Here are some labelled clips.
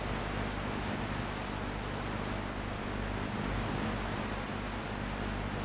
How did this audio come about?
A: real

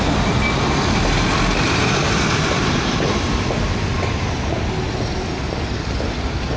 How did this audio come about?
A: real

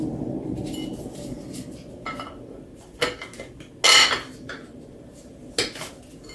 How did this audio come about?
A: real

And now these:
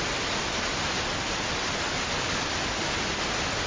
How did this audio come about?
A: real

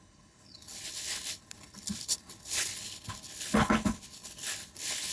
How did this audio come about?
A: fake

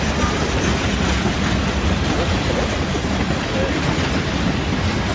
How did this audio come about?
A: real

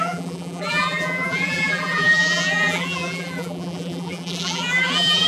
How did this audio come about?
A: fake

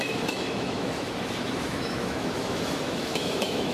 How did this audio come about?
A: fake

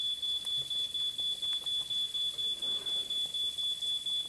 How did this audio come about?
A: real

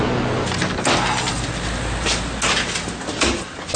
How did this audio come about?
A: real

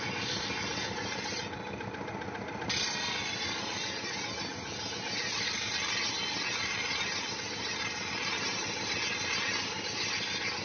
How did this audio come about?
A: real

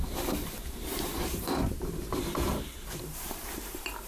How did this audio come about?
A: fake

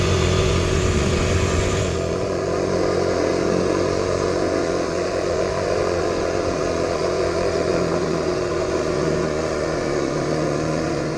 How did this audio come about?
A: fake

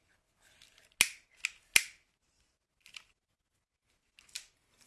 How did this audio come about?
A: real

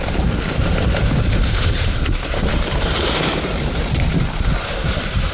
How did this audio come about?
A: fake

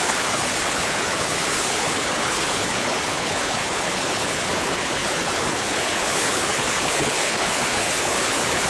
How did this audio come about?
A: fake